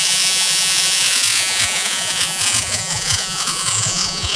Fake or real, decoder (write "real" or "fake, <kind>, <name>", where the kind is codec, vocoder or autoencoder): fake, vocoder, Vocos